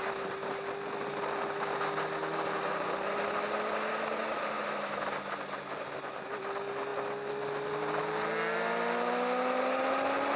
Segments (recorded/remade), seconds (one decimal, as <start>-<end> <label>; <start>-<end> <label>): 0.0-6.9 recorded; 6.9-8.0 remade; 8.0-10.4 recorded